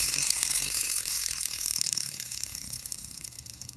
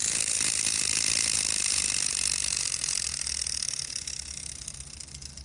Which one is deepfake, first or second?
first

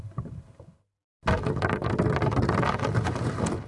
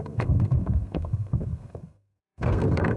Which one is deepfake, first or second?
second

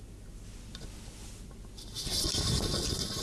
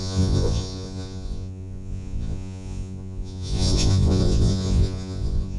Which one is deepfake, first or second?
second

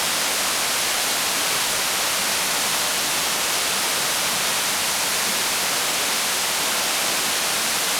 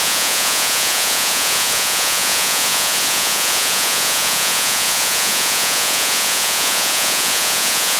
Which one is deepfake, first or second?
second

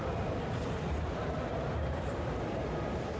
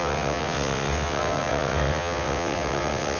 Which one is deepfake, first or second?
second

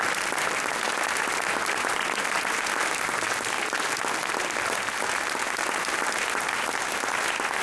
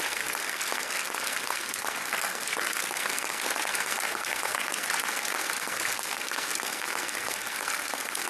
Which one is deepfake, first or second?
second